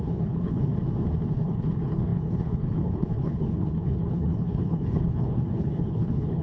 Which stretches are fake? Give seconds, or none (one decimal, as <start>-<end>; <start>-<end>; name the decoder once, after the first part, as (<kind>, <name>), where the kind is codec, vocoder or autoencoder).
0.0-0.7 (codec, HILCodec); 1.3-6.4